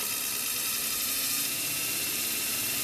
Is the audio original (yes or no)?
no